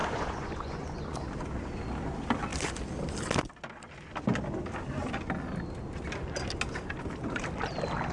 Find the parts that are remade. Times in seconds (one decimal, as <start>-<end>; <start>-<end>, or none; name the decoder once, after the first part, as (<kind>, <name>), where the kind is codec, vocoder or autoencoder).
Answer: 0.0-1.2 (vocoder, Vocos)